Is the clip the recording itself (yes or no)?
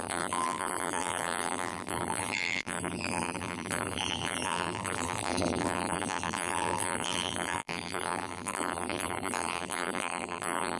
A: no